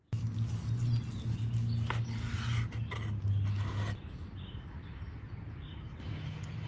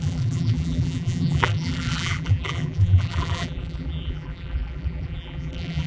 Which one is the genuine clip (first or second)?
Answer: first